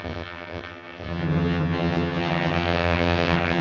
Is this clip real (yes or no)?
no